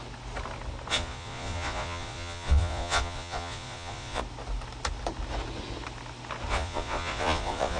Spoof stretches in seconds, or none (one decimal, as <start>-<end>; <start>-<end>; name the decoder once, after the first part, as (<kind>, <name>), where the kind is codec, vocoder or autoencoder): 0.9-4.2 (vocoder, Vocos); 6.5-7.8